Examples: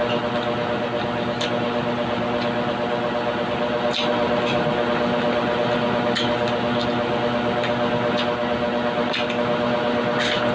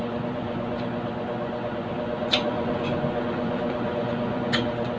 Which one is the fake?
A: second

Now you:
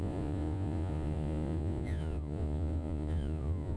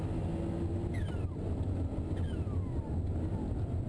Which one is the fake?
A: first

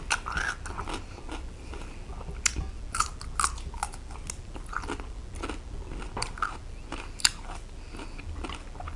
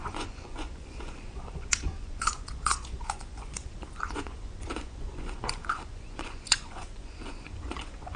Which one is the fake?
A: second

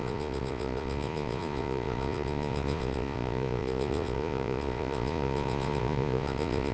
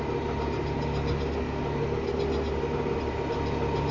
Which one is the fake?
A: first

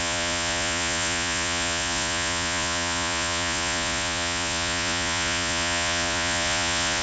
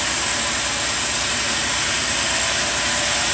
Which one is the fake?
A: first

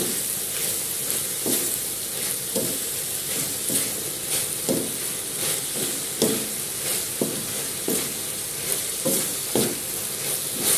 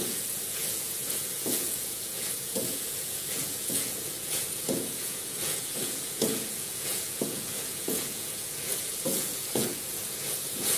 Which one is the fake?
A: second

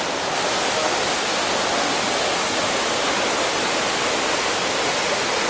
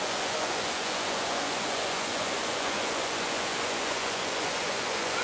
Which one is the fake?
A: second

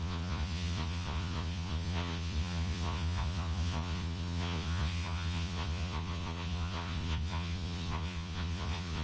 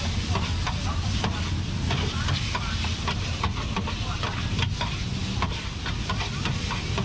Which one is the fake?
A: first